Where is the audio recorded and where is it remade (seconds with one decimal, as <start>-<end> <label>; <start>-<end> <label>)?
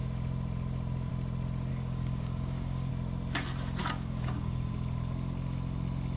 0.0-1.7 recorded; 1.7-2.9 remade; 2.9-3.8 recorded; 3.8-4.7 remade; 4.7-6.2 recorded